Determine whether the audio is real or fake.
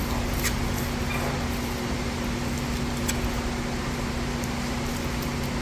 real